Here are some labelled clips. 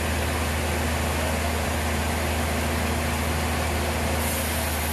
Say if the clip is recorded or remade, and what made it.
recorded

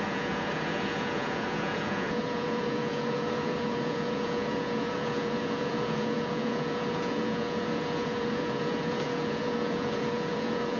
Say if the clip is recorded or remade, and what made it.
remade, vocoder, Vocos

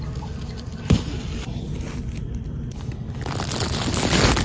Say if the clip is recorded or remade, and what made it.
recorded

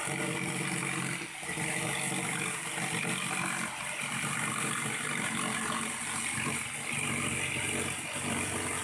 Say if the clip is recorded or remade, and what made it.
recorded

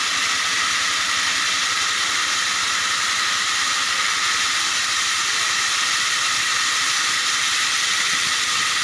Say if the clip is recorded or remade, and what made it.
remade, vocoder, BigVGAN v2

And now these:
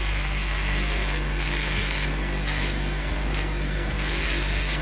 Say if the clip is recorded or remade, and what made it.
remade, codec, SNAC